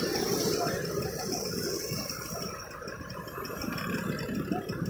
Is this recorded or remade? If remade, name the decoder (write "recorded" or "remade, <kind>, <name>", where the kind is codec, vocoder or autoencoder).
recorded